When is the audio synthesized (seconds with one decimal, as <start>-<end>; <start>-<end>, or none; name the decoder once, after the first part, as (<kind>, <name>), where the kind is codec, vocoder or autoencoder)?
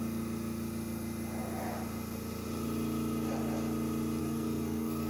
4.2-5.1 (codec, SNAC)